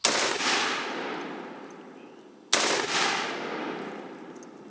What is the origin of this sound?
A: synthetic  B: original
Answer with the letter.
B